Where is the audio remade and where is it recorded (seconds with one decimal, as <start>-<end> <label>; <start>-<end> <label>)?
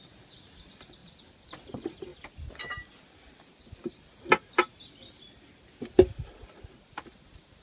0.0-7.6 recorded